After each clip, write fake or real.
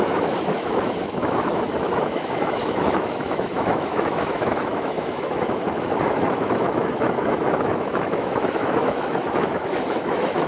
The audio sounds fake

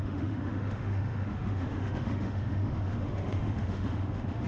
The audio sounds fake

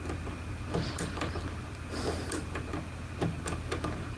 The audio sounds real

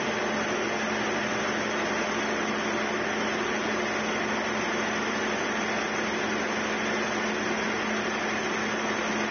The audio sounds real